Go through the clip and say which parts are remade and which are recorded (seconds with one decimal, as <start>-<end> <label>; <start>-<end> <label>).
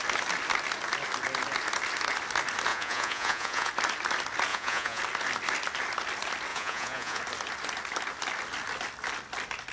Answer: 0.0-2.7 recorded; 2.7-3.7 remade; 3.7-4.5 recorded; 4.5-5.0 remade; 5.0-6.5 recorded; 6.5-7.2 remade; 7.2-9.7 recorded